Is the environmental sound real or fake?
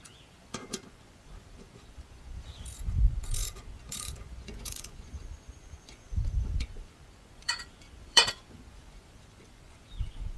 fake